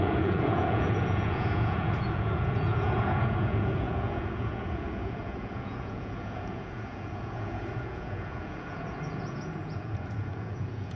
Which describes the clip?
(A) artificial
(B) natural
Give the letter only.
A